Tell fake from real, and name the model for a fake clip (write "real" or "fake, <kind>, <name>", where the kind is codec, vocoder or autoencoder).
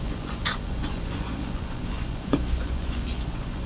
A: fake, vocoder, Vocos